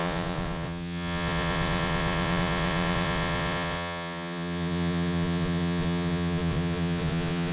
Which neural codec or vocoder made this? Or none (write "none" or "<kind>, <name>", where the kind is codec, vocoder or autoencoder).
vocoder, Vocos